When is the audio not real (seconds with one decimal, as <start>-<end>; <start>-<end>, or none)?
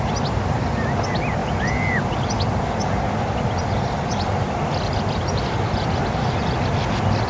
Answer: none